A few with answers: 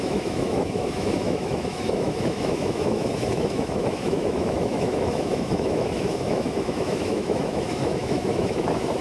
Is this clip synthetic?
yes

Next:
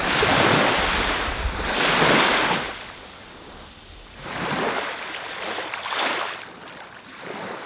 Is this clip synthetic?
no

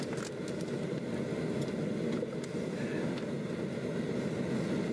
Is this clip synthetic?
no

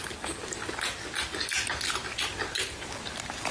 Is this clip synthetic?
no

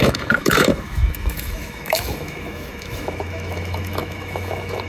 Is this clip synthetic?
yes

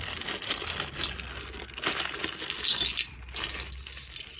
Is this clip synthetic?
no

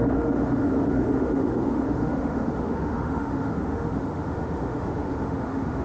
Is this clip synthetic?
yes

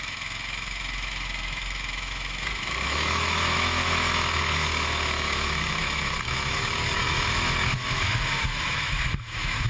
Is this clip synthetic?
yes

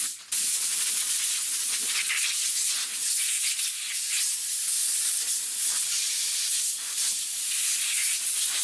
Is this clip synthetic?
no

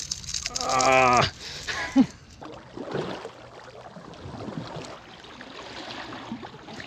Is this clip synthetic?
no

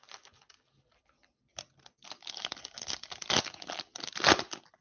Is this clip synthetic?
no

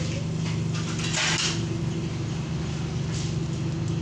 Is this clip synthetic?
no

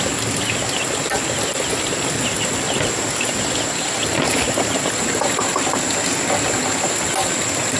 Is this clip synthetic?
no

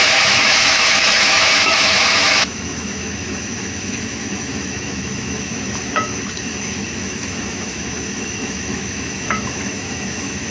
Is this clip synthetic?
yes